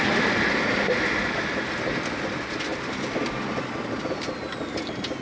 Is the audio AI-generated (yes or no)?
no